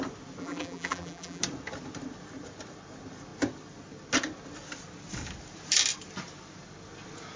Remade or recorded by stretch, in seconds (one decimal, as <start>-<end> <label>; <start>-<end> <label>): 0.0-0.4 recorded; 0.4-1.4 remade; 1.4-7.4 recorded